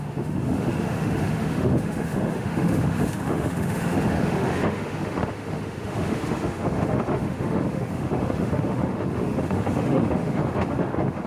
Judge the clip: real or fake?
fake